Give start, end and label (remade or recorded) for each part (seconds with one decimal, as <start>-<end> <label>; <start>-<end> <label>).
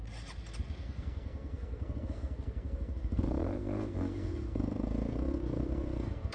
0.0-0.8 recorded; 0.8-6.3 remade